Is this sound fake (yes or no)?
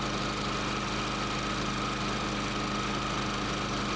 no